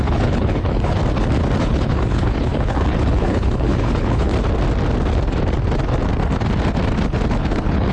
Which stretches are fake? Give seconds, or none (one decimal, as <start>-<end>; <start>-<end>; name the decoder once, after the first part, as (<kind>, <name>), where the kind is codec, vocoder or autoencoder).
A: 0.0-1.0 (codec, HILCodec); 1.6-4.3; 7.4-7.9